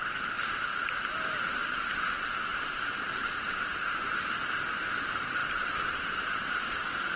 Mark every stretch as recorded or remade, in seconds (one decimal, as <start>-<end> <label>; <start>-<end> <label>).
0.0-7.2 remade